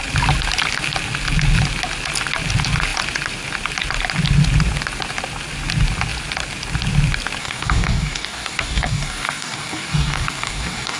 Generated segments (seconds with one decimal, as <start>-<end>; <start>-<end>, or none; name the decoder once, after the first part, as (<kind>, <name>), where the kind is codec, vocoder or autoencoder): 7.4-11.0 (codec, DAC)